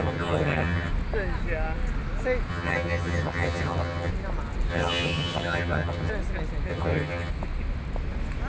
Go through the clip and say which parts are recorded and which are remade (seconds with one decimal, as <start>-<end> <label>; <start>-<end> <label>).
0.0-0.9 remade; 0.9-2.5 recorded; 2.5-4.1 remade; 4.1-4.7 recorded; 4.7-6.1 remade; 6.1-6.7 recorded; 6.7-7.3 remade; 7.3-8.5 recorded